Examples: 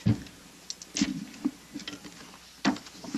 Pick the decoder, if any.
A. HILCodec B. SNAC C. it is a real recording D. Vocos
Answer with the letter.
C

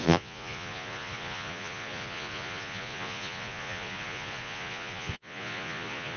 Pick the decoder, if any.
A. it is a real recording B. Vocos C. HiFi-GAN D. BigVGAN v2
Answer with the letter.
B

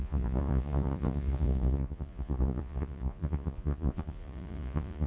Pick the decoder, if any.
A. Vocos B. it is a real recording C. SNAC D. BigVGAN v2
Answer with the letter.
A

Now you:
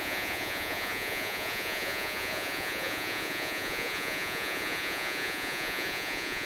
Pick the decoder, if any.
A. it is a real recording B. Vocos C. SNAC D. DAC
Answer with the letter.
B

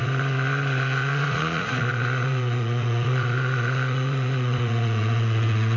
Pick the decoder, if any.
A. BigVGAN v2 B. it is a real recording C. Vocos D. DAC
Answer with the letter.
C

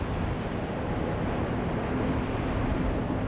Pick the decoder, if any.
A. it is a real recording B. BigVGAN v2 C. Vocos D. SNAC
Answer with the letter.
A